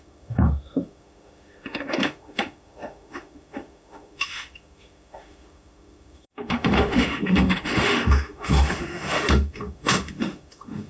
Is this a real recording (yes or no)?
no